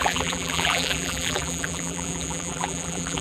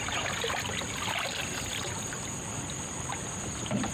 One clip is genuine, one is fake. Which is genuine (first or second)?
second